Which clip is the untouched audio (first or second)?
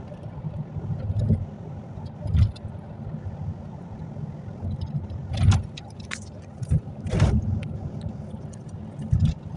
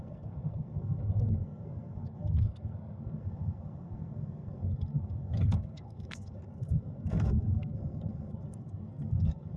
first